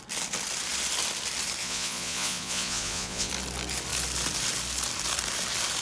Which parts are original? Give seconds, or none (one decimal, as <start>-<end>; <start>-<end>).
0.0-1.6; 3.3-5.8